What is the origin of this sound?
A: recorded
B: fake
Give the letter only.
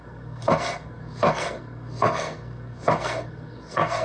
B